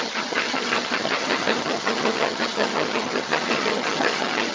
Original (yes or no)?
no